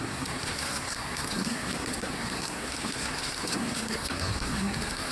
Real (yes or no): no